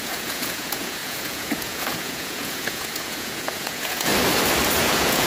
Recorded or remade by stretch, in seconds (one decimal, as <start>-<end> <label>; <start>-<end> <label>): 0.0-4.1 remade; 4.1-4.8 recorded; 4.8-5.3 remade